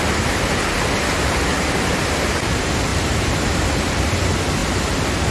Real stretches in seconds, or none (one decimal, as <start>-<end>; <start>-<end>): 0.0-2.9; 4.0-5.3